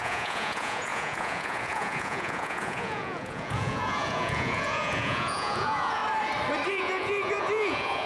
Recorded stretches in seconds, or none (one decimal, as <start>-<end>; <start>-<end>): 6.0-6.7